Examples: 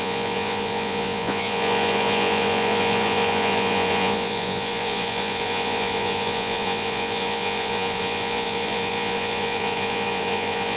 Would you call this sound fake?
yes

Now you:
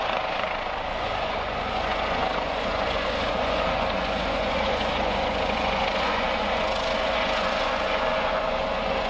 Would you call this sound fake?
yes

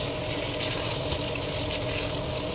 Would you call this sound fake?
no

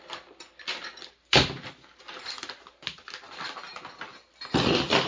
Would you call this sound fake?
no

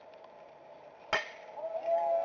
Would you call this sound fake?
no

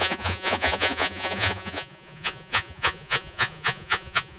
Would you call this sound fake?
yes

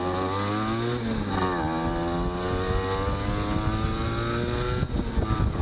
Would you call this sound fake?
no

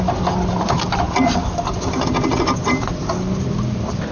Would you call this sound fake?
no